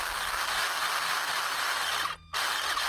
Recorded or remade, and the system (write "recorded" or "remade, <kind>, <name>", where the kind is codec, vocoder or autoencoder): recorded